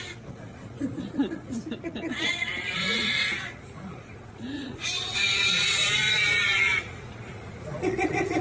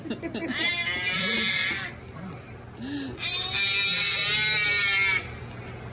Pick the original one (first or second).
second